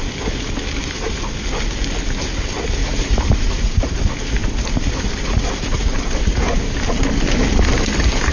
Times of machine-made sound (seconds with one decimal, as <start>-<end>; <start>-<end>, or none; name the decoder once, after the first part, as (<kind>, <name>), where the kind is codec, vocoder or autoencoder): 2.8-3.9 (vocoder, BigVGAN v2); 4.4-6.6